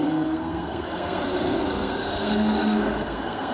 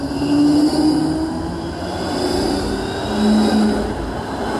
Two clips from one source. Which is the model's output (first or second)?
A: first